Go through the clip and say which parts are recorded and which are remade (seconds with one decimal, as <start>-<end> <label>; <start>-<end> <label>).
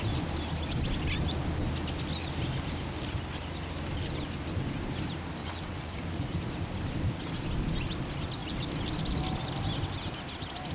0.0-5.4 recorded; 5.4-6.0 remade; 6.0-10.7 recorded